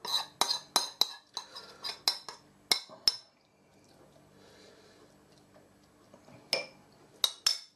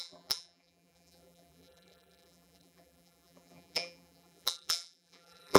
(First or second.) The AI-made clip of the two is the second